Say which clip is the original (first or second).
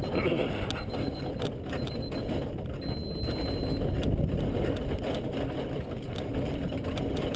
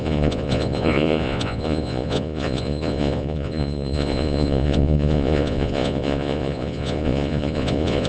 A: first